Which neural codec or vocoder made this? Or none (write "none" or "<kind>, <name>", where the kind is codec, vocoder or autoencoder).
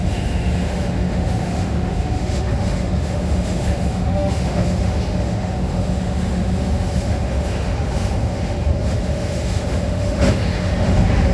autoencoder, DAC-VAE